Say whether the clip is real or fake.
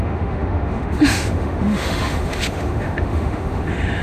fake